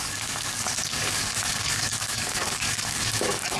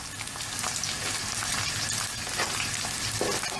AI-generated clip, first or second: first